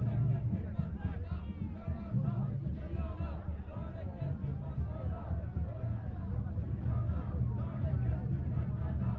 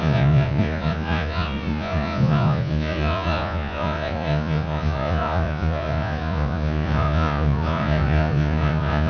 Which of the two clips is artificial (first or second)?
second